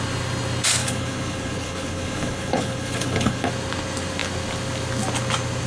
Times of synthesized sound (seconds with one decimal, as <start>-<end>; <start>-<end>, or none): 0.8-3.5